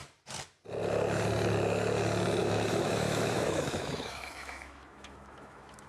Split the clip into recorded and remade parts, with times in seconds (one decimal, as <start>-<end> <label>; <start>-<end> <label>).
0.0-2.4 recorded; 2.4-5.9 remade